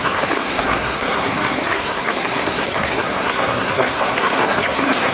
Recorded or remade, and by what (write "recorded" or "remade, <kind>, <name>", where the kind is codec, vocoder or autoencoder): remade, codec, SNAC